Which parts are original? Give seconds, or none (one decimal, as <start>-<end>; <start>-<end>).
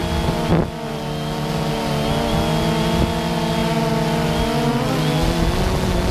0.0-6.1